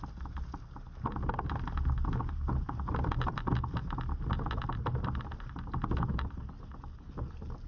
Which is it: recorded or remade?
recorded